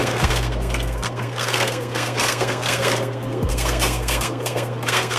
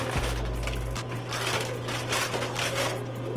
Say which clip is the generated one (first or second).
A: first